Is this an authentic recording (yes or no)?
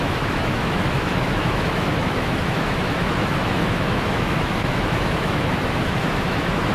no